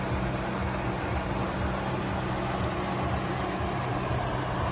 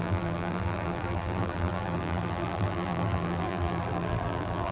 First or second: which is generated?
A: second